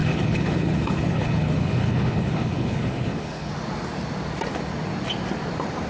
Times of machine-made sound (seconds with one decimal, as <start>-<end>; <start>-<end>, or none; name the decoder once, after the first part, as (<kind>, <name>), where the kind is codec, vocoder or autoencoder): 0.0-3.5 (codec, HILCodec)